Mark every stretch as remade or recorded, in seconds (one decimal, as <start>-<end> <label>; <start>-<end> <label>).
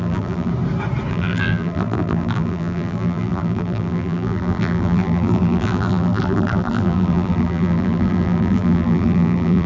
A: 0.0-0.5 remade; 0.5-1.1 recorded; 1.1-9.7 remade